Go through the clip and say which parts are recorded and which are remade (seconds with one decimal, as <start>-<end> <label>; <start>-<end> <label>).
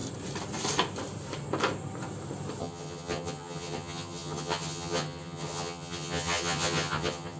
0.0-2.6 recorded; 2.6-7.4 remade